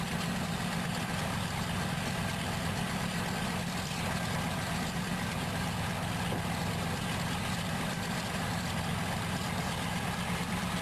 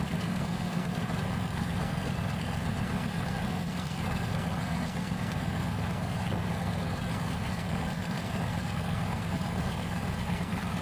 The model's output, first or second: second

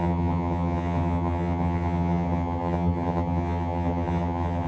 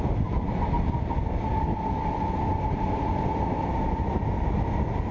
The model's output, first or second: first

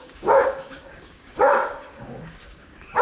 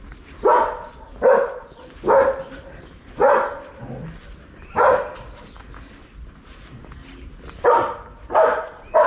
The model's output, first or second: first